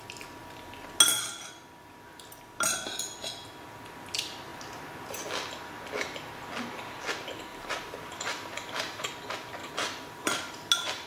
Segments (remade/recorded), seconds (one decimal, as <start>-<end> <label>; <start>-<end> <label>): 0.0-7.5 recorded; 7.5-9.1 remade; 9.1-9.6 recorded; 9.6-10.7 remade; 10.7-11.1 recorded